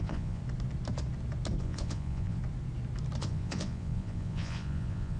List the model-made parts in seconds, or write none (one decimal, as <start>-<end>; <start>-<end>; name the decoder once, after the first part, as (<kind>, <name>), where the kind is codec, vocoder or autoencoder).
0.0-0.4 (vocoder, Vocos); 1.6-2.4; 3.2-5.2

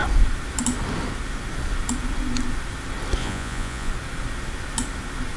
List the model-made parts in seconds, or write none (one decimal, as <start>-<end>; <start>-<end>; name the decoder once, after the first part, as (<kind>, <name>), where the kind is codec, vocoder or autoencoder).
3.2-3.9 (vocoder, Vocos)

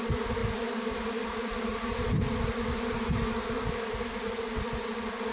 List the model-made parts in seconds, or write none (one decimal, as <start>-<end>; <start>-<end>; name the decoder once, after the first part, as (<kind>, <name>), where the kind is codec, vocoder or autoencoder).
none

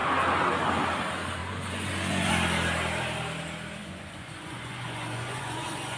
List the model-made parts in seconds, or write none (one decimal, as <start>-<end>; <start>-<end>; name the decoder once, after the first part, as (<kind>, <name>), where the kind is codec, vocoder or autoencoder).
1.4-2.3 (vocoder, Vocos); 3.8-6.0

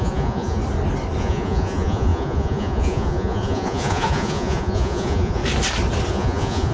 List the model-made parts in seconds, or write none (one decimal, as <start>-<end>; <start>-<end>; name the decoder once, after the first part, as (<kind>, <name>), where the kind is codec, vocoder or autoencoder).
0.0-0.6 (vocoder, Vocos); 1.2-5.4; 6.1-6.7

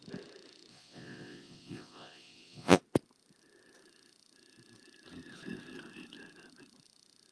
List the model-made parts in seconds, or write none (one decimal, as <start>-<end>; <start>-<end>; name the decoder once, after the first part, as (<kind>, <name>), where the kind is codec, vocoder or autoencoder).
0.7-2.8 (vocoder, Vocos)